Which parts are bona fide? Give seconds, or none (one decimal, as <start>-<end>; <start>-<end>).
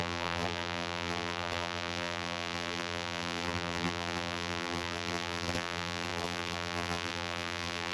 none